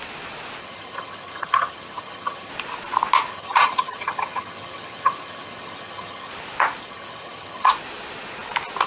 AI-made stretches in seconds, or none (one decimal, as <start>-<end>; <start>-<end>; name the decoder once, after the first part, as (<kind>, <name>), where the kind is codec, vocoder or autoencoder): 0.6-2.5 (vocoder, HiFi-GAN); 3.3-6.3; 6.8-7.7